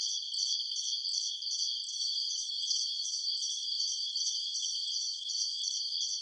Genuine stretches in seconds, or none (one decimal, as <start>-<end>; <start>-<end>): 0.0-1.9; 5.6-6.2